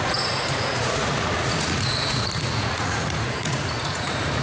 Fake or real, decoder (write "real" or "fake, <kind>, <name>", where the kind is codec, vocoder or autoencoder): fake, vocoder, Vocos